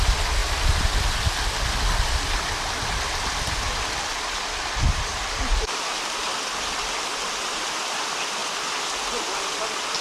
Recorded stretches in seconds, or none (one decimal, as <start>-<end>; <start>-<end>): 0.0-5.1; 7.2-10.0